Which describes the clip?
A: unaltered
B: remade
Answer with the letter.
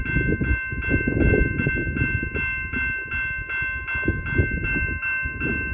A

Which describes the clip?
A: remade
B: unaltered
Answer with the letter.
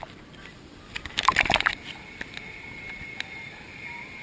A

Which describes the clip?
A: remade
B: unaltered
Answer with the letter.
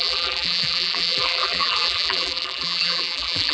A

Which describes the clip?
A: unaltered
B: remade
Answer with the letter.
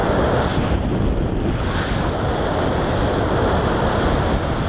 A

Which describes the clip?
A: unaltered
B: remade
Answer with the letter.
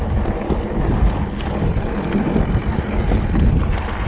A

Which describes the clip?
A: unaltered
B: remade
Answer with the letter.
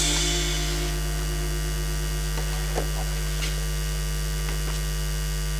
A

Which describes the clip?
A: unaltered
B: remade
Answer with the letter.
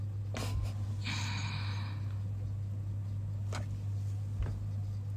A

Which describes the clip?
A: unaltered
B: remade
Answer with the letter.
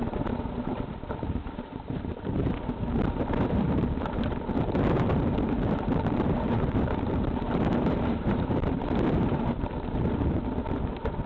B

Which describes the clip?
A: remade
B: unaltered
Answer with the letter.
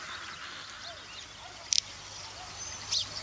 A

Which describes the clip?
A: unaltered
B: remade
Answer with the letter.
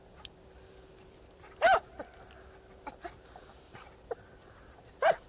A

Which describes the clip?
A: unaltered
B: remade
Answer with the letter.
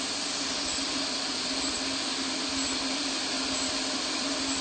B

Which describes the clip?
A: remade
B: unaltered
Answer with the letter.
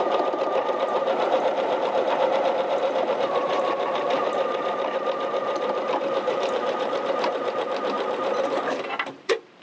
A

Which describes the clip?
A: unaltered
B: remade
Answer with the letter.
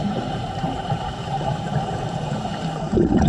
B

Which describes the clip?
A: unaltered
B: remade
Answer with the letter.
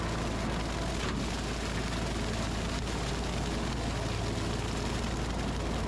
A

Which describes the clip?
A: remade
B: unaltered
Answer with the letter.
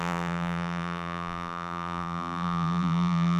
A